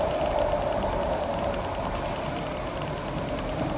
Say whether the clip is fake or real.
real